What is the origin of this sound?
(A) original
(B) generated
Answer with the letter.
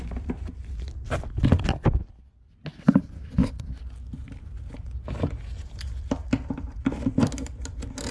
A